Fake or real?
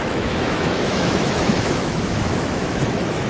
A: fake